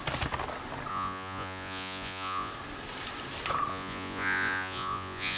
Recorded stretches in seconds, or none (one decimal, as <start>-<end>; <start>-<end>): 0.0-0.9; 2.5-3.7

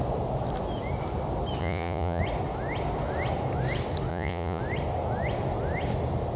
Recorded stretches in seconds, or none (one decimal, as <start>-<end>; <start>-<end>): 0.0-1.6; 2.2-4.1; 4.6-6.4